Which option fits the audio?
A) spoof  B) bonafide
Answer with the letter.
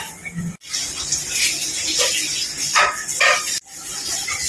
B